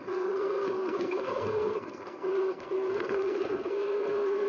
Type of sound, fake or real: fake